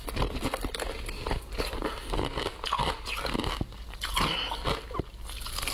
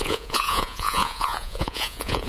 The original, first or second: first